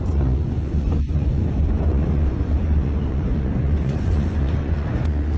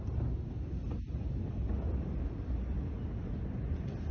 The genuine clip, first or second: second